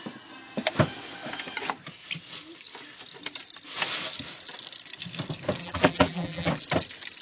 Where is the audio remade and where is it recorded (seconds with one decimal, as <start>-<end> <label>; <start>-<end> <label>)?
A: 0.0-5.6 recorded; 5.6-6.5 remade; 6.5-7.2 recorded